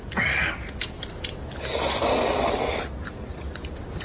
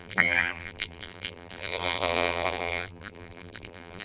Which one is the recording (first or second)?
first